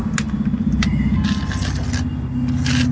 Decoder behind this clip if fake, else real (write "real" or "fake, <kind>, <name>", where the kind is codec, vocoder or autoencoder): real